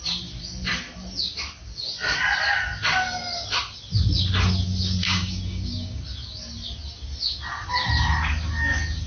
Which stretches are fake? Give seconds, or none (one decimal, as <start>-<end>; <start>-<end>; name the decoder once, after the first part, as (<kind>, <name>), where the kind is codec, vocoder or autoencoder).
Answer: 5.0-6.0 (codec, DAC)